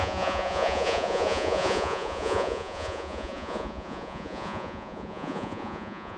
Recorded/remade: remade